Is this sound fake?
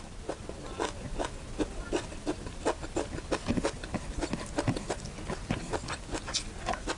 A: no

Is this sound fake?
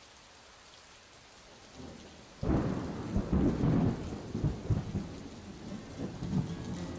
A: no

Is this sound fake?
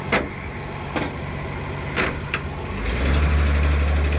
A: no